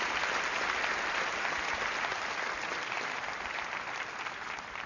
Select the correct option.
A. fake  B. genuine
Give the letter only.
B